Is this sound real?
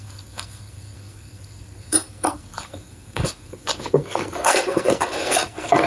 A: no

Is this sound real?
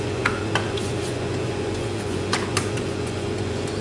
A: no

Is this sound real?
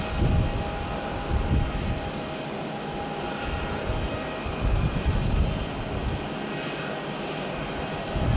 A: yes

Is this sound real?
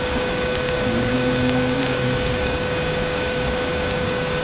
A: no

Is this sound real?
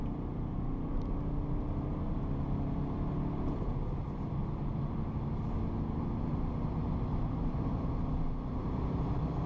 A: yes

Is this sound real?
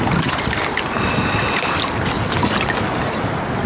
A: yes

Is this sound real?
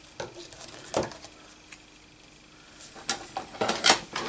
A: yes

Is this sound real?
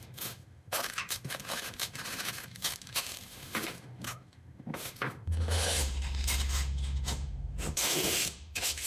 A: no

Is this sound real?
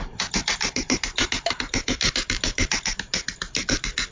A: yes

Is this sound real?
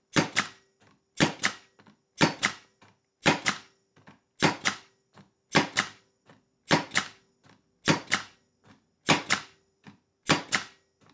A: yes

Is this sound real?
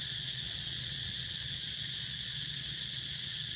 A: no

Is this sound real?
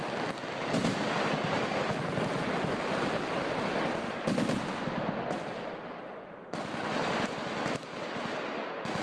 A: yes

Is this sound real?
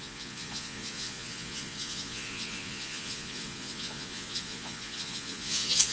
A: no